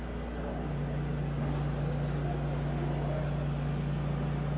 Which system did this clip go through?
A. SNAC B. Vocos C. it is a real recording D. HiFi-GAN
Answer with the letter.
C